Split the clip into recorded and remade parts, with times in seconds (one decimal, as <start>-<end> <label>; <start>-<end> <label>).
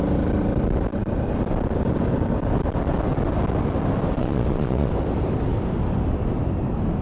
0.0-4.2 recorded; 4.2-4.9 remade; 4.9-7.0 recorded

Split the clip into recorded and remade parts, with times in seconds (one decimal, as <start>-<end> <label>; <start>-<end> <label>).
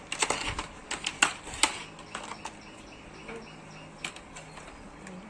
0.0-5.3 recorded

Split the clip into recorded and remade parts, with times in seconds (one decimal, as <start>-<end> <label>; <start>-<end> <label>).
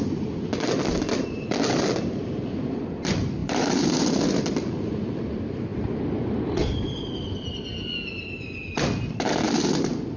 0.0-3.4 recorded; 3.4-4.1 remade; 4.1-10.2 recorded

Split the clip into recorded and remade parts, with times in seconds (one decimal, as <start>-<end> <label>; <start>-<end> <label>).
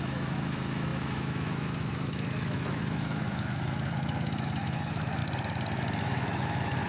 0.0-5.2 remade; 5.2-6.0 recorded; 6.0-6.9 remade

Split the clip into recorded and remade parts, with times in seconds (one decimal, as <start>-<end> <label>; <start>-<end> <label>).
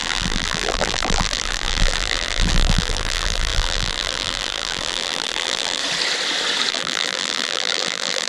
0.0-5.8 remade; 5.8-6.7 recorded; 6.7-8.3 remade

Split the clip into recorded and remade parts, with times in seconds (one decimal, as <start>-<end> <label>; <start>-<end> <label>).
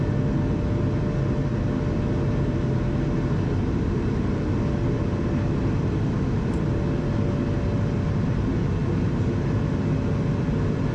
0.0-10.9 recorded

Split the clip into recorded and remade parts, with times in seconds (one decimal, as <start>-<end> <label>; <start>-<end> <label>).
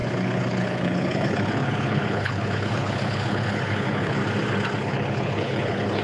0.0-4.2 remade; 4.2-4.8 recorded; 4.8-6.0 remade